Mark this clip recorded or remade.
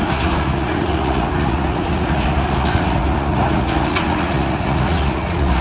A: remade